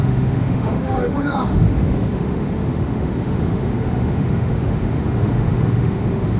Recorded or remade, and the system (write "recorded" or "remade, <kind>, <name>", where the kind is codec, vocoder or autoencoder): remade, autoencoder, DAC-VAE